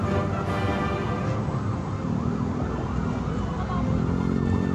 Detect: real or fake real